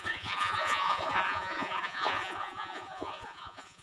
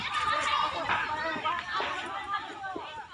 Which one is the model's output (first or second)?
first